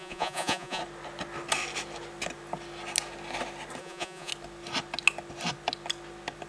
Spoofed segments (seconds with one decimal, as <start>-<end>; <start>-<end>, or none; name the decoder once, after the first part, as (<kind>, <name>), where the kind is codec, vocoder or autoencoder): 0.0-0.8 (vocoder, Vocos); 3.8-4.3